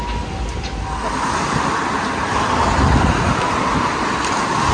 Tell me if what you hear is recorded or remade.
recorded